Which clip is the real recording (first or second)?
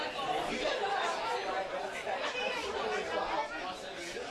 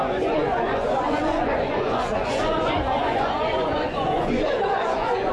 first